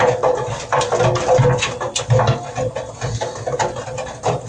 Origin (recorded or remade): recorded